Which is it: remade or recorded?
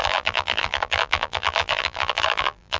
remade